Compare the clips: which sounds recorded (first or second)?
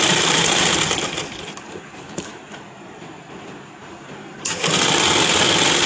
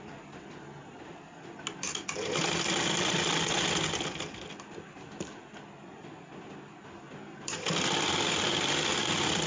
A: second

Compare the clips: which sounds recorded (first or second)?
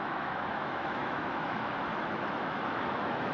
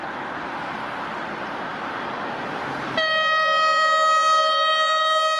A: second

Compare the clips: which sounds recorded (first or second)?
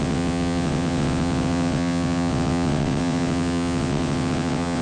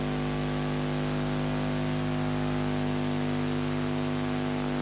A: second